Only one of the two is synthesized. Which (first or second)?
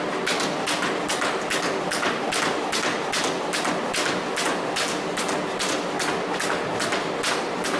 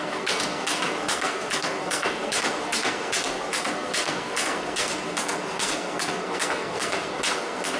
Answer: second